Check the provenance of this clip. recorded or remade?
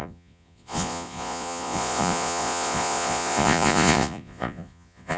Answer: remade